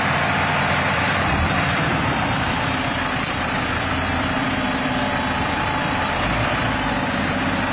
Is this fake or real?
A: fake